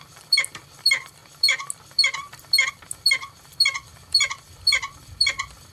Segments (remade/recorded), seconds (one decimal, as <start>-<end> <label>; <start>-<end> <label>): 0.0-1.2 remade; 1.2-2.7 recorded; 2.7-5.7 remade